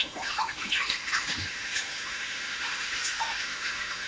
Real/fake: fake